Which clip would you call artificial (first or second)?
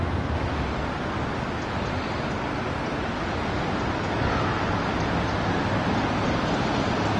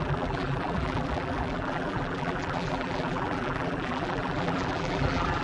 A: second